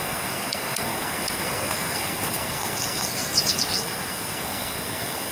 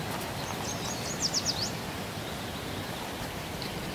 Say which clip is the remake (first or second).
first